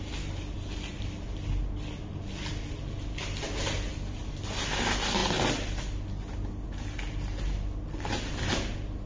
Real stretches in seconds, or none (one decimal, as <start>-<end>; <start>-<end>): 0.0-9.1